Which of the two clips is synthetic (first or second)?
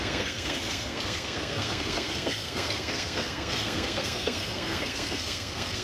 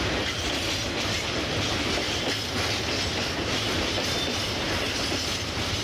first